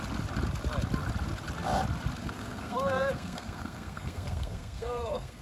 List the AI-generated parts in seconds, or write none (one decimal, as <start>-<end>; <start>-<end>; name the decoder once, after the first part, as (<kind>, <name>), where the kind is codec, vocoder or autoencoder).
2.2-5.4 (codec, SNAC)